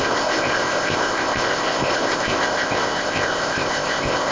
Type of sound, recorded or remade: remade